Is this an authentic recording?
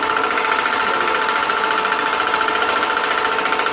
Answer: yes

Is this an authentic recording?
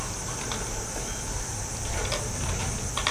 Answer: yes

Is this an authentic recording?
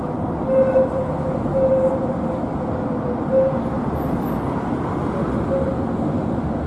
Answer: yes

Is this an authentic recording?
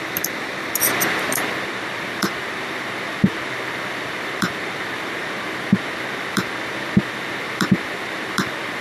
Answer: no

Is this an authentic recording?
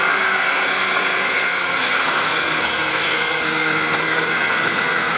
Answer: no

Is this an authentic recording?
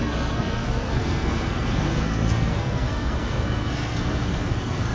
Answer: no